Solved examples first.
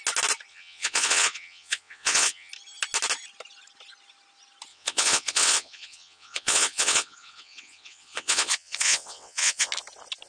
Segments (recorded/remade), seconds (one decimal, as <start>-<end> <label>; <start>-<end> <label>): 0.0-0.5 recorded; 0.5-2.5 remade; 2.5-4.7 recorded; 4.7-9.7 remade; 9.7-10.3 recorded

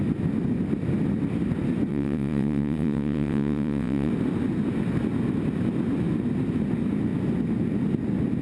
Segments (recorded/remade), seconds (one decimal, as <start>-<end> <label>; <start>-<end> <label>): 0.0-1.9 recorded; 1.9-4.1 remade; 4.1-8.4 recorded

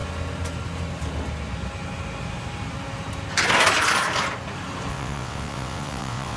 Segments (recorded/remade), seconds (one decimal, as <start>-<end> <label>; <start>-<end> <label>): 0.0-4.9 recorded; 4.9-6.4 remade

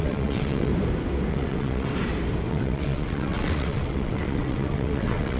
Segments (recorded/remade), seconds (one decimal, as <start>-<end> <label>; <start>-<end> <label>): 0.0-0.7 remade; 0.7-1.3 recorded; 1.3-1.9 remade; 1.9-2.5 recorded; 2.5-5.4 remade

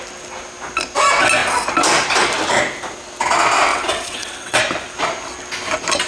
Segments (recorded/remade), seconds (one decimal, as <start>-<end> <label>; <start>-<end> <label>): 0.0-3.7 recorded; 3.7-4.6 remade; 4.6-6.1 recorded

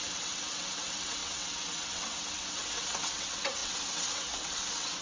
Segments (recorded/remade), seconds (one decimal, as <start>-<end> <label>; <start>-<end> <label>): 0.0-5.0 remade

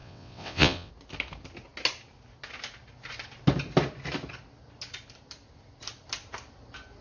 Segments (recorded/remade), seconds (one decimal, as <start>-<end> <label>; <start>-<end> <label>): 0.0-0.9 remade; 0.9-7.0 recorded

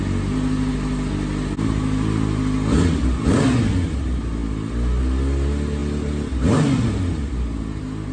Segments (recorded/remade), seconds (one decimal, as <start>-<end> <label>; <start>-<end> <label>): 0.0-8.1 recorded